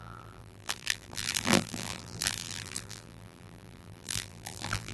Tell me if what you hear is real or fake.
fake